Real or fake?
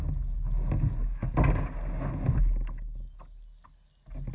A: real